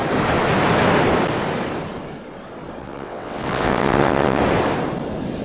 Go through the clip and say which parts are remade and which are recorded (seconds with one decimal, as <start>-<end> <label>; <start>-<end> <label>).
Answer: 0.0-2.8 recorded; 2.8-4.4 remade; 4.4-5.4 recorded